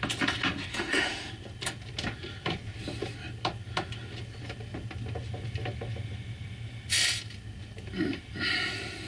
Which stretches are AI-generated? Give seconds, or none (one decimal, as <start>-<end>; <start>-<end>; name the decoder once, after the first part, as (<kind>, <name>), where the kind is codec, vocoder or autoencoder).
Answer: 0.7-1.3 (autoencoder, DAC-VAE)